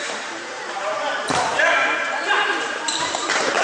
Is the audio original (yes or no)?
no